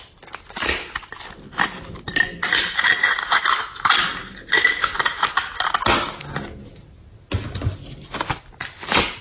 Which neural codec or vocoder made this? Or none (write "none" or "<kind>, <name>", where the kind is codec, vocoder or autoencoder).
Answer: none